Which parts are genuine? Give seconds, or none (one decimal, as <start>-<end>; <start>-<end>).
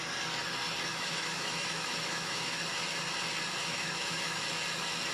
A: 0.0-0.9; 2.6-3.6; 4.4-5.1